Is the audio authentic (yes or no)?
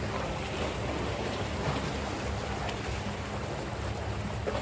yes